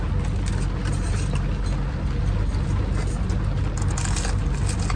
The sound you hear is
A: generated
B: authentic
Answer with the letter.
B